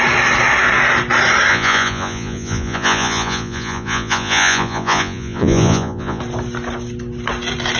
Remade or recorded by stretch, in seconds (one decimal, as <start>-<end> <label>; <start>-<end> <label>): 0.0-1.5 recorded; 1.5-6.2 remade; 6.2-7.8 recorded